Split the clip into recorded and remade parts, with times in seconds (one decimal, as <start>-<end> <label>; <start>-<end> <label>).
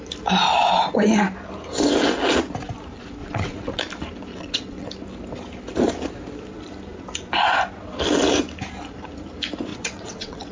0.0-3.2 recorded; 3.2-3.8 remade; 3.8-4.3 recorded; 4.3-4.9 remade; 4.9-9.7 recorded; 9.7-10.5 remade